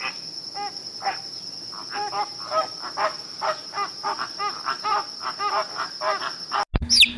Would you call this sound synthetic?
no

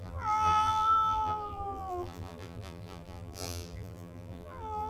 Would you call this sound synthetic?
yes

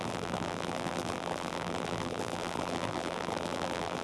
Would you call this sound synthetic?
yes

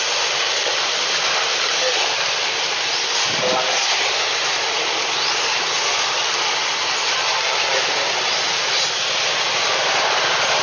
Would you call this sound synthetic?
no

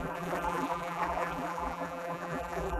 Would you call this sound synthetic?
yes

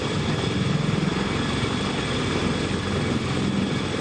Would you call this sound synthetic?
no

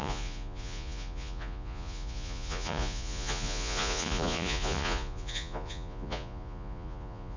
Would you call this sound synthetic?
yes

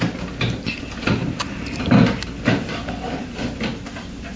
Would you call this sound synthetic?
no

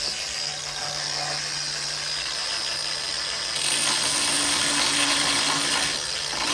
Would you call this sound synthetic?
no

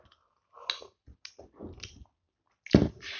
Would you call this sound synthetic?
no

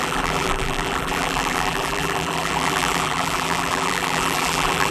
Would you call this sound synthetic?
yes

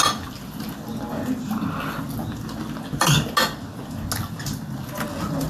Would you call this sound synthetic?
no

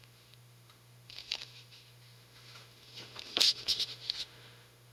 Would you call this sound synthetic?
yes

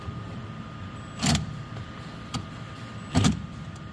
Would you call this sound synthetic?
yes